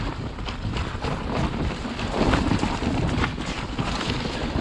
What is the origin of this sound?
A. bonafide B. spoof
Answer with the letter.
A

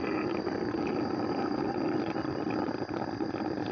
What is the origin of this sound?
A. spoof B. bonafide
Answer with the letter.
B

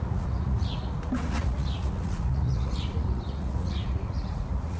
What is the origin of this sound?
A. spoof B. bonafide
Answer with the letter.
A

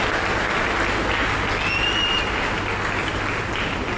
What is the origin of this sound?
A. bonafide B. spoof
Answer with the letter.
A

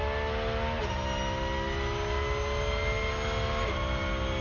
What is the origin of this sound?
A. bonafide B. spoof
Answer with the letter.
A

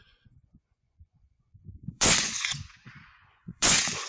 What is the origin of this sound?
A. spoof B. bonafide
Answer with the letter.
A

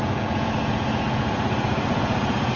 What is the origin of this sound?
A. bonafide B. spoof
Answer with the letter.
B